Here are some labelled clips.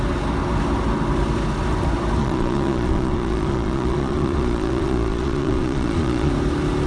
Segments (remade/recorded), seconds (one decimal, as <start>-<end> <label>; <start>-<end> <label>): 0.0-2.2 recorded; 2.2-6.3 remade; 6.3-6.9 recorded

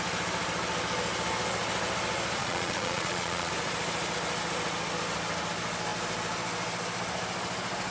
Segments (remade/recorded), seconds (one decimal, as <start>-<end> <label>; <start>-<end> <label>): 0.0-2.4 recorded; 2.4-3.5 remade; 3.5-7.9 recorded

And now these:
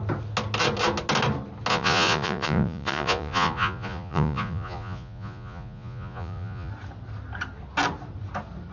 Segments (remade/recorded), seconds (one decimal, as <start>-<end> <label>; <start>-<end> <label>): 0.0-1.7 recorded; 1.7-6.7 remade; 6.7-8.7 recorded